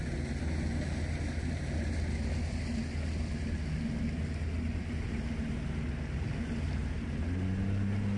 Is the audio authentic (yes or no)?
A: yes